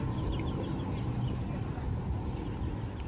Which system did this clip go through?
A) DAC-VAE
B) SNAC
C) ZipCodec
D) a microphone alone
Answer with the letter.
D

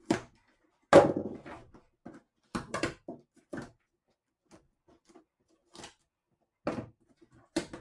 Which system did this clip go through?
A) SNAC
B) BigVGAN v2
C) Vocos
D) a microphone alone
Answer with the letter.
D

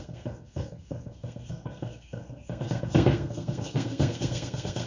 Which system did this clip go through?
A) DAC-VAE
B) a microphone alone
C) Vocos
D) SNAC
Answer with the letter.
D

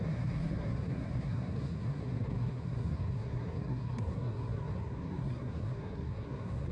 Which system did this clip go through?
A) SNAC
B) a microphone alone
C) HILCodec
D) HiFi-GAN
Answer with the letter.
A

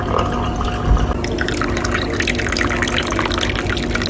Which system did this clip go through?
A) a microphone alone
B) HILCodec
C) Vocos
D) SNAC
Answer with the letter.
A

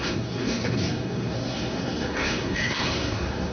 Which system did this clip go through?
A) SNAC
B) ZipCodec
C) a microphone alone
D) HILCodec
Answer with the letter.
A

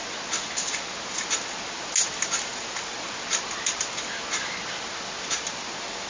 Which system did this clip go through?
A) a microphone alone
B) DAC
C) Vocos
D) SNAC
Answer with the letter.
A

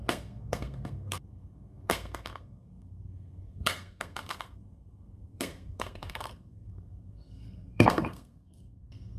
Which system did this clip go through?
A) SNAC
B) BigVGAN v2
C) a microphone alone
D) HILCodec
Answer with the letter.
A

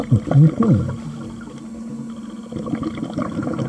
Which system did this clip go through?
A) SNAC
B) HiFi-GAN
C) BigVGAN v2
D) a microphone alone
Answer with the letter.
D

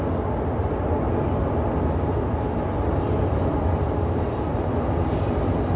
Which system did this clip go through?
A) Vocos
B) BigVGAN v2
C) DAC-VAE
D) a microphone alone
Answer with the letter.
D